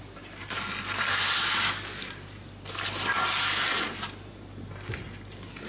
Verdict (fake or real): real